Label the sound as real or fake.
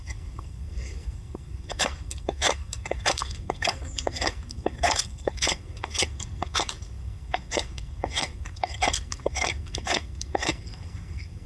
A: fake